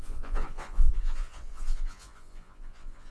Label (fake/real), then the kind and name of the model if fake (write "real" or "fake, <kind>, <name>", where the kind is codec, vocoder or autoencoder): fake, vocoder, Vocos